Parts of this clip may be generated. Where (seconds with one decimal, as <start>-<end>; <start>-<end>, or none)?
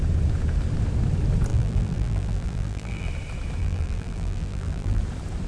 1.5-3.1; 3.6-5.0